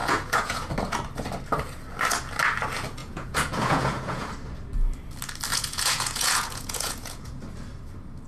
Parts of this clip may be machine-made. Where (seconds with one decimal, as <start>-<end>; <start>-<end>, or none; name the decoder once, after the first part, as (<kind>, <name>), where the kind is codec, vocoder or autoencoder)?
0.0-0.7 (vocoder, Vocos); 3.0-4.3; 5.5-7.4